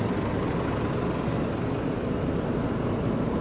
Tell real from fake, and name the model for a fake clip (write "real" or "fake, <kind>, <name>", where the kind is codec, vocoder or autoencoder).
real